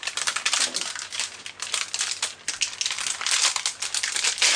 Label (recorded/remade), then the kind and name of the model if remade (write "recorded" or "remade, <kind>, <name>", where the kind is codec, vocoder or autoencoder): recorded